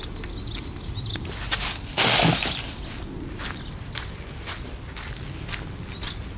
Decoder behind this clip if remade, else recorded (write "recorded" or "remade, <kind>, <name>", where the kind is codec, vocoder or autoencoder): recorded